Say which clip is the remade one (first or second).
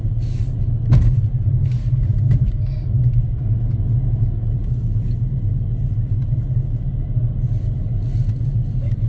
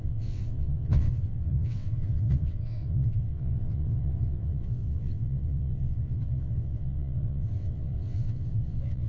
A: second